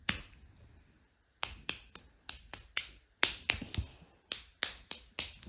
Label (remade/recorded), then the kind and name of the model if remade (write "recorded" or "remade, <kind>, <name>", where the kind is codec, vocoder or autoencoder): recorded